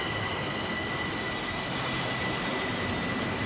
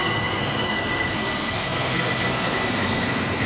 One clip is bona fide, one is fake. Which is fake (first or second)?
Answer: second